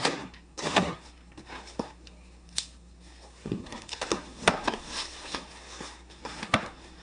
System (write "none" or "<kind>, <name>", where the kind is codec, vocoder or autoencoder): codec, SNAC